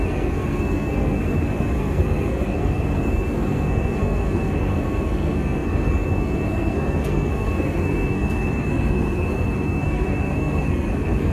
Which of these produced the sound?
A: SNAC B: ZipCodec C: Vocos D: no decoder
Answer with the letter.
A